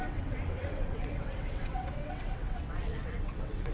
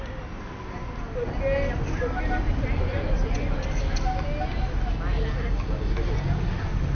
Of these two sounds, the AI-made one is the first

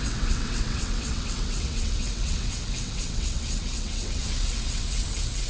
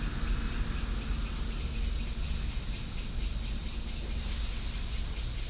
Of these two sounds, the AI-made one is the first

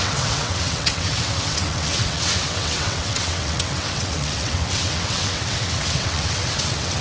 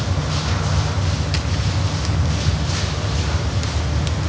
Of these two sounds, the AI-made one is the first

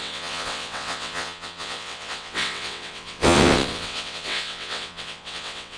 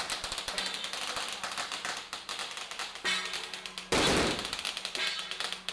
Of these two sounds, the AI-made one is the first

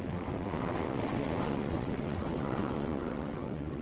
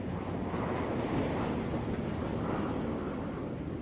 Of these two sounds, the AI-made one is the first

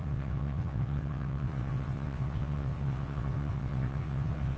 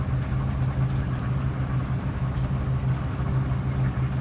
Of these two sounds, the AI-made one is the first